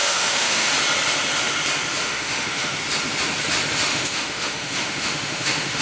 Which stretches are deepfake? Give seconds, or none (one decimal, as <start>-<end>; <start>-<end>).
0.0-0.7; 2.0-2.8; 3.9-5.8